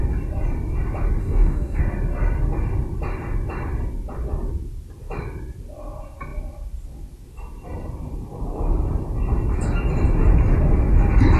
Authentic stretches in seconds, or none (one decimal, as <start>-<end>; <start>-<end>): 0.0-1.2; 1.8-11.4

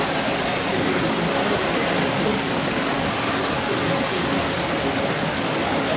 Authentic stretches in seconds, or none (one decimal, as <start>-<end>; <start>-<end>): 0.0-0.7; 1.3-2.3

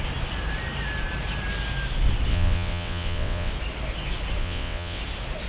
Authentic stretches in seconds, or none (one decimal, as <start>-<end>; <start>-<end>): 0.0-2.3; 3.5-4.4; 5.0-5.5

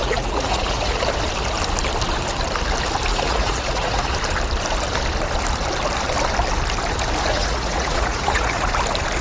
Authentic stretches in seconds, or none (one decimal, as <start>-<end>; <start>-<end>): 1.0-3.1; 4.1-7.3; 8.7-9.2

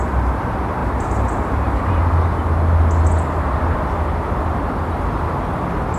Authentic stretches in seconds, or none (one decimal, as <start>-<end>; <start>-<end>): 0.0-0.8; 2.0-6.0

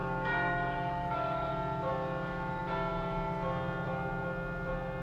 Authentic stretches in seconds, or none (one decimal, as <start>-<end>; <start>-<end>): 1.5-5.0

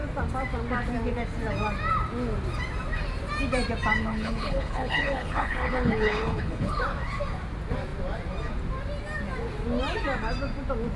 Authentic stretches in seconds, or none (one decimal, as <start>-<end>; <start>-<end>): 0.0-4.0; 6.8-11.0